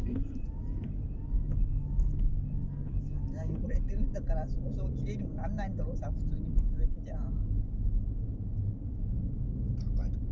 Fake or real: real